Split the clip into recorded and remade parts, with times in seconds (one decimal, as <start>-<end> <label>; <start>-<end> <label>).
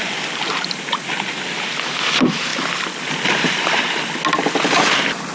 0.0-2.5 recorded; 2.5-3.0 remade; 3.0-5.3 recorded